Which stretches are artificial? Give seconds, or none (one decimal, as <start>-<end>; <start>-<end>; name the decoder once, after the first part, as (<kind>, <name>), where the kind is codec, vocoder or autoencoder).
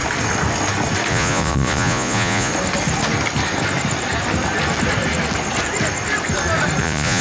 1.1-2.5 (vocoder, Vocos); 6.8-7.2